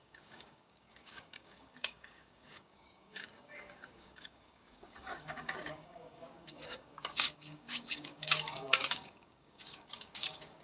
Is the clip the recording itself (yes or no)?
no